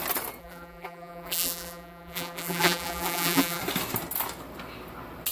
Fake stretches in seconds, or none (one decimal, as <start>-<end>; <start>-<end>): 0.4-3.6